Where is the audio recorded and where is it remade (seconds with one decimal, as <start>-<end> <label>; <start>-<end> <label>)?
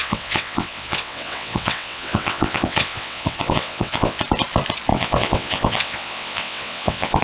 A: 0.0-4.2 remade; 4.2-4.9 recorded; 4.9-7.2 remade